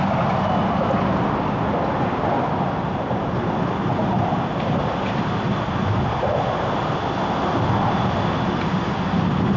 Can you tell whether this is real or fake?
real